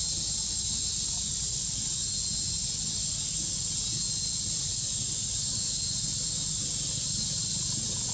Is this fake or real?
real